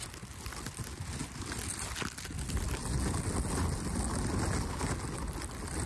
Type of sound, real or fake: real